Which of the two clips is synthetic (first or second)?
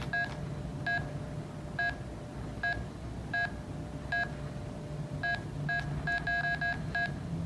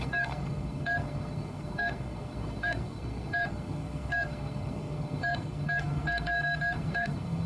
second